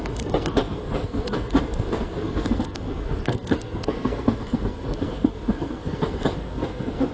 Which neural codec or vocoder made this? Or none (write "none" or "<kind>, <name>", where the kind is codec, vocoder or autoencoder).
codec, SNAC